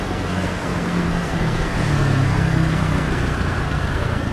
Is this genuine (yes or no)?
no